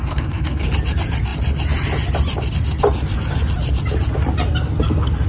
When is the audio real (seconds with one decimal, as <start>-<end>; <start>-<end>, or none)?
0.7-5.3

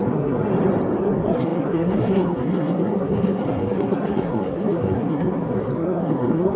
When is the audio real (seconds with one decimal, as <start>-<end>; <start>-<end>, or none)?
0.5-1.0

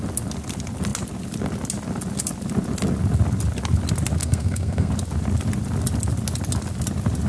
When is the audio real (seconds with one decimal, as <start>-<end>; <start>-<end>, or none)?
0.0-4.2; 4.9-7.3

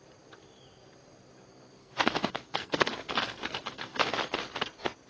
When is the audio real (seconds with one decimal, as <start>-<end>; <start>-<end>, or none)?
0.0-1.8; 4.1-5.1

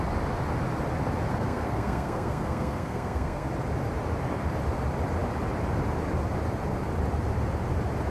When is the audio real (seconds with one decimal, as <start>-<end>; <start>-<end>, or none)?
0.0-1.3; 3.5-8.1